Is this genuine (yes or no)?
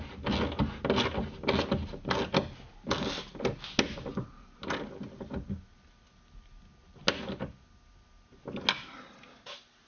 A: yes